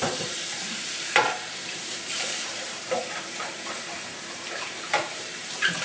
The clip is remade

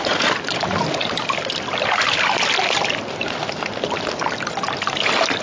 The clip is remade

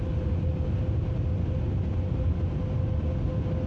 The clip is recorded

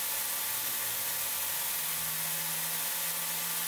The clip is recorded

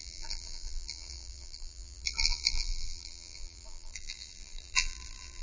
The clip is remade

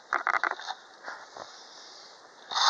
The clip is remade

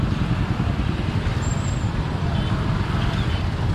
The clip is remade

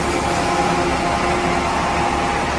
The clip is recorded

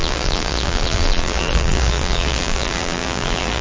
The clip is remade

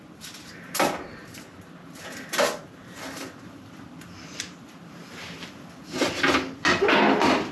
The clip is recorded